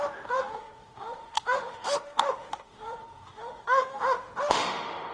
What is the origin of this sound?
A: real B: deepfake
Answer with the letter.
B